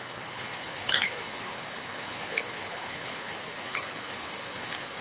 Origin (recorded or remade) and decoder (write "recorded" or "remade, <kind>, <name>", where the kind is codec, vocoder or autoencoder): remade, codec, HILCodec